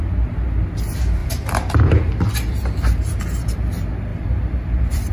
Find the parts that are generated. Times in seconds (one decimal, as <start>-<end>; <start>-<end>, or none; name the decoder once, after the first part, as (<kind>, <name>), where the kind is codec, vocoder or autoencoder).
1.2-2.3 (vocoder, BigVGAN v2); 4.1-5.1